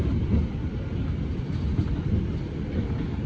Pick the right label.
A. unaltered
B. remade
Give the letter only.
A